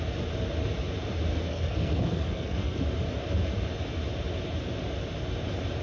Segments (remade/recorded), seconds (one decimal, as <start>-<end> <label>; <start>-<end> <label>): 0.0-1.3 recorded; 1.3-2.8 remade; 2.8-5.8 recorded